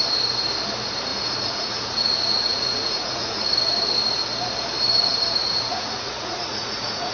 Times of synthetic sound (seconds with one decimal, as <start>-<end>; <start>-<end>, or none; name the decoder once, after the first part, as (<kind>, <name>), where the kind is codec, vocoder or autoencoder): 1.1-3.5 (vocoder, Vocos); 5.4-7.1